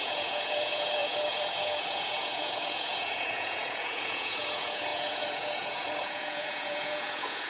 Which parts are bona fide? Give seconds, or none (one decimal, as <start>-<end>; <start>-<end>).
none